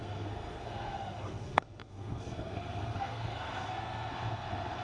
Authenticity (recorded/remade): remade